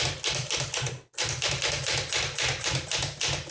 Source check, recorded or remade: recorded